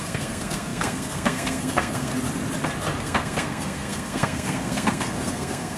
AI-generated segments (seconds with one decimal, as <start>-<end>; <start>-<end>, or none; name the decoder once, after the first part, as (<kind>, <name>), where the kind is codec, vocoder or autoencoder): 0.0-2.1 (codec, SNAC); 3.0-5.8